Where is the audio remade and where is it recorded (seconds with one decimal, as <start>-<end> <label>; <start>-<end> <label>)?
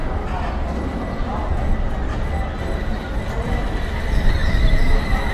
0.0-5.3 recorded